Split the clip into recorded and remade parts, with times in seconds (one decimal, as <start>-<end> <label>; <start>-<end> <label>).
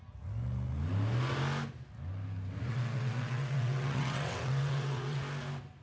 0.0-2.7 recorded; 2.7-5.2 remade; 5.2-5.8 recorded